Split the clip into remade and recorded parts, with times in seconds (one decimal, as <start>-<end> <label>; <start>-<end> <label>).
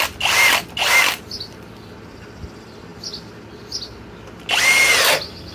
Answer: 0.0-5.5 recorded